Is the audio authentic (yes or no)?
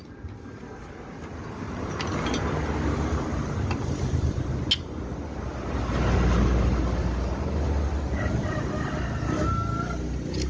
yes